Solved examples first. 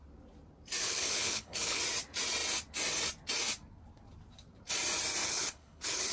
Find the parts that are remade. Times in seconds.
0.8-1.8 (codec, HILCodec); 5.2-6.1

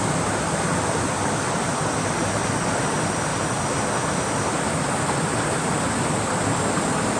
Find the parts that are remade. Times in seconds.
none

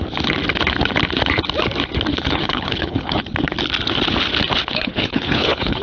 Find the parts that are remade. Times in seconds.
2.1-3.2 (codec, HILCodec); 4.7-5.8

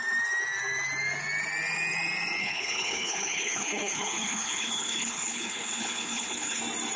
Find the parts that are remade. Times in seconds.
2.4-6.6 (codec, HILCodec)

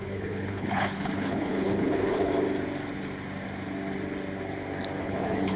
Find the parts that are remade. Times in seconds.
0.0-2.3 (codec, HILCodec); 5.0-5.6

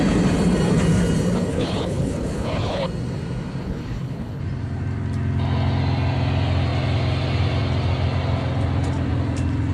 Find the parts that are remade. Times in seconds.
1.5-2.8 (codec, HILCodec); 3.6-4.4

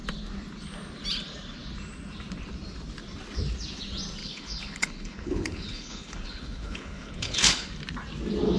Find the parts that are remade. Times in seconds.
4.2-7.7 (codec, HILCodec)